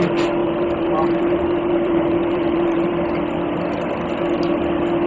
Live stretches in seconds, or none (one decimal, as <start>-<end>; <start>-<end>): 0.0-0.4; 2.9-5.1